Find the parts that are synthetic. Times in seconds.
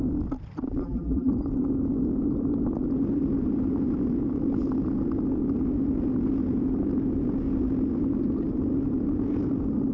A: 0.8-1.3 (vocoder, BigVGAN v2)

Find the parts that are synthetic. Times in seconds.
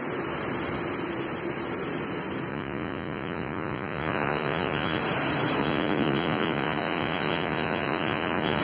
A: 2.5-5.0 (vocoder, Vocos); 5.6-8.6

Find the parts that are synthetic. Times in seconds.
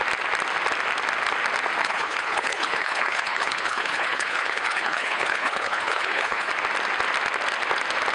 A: 1.8-6.5 (codec, HILCodec)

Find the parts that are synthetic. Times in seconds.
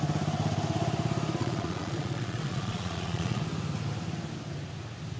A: 1.4-3.4 (vocoder, Vocos)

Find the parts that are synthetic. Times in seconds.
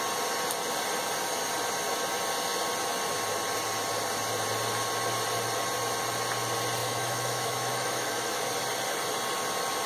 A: 6.8-8.4 (autoencoder, DAC-VAE)